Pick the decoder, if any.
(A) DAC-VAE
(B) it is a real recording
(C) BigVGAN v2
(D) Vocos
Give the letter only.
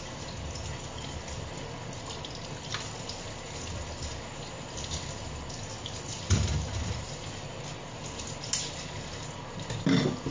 B